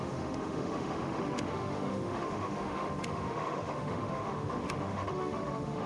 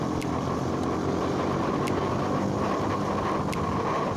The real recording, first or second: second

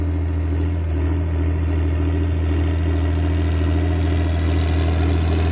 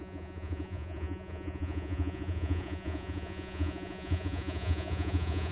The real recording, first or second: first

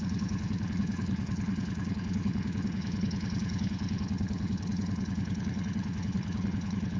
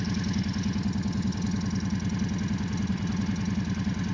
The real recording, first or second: second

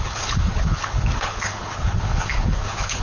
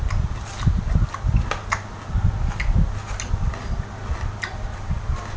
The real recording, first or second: second